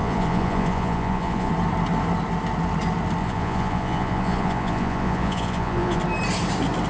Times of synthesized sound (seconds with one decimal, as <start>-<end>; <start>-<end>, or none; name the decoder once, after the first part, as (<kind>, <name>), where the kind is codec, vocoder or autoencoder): 0.0-1.5 (vocoder, Vocos); 3.2-6.0